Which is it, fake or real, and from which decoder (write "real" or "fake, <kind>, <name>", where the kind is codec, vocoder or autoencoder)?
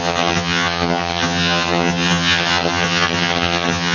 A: fake, vocoder, HiFi-GAN